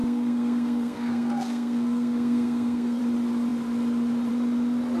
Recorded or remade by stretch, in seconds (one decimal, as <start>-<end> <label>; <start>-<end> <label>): 0.0-3.0 remade; 3.0-5.0 recorded